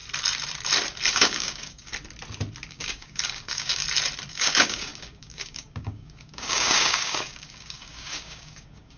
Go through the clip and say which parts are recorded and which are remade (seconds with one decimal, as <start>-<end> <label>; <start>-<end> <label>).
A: 0.0-1.1 recorded; 1.1-1.9 remade; 1.9-2.7 recorded; 2.7-3.8 remade; 3.8-4.3 recorded; 4.3-9.0 remade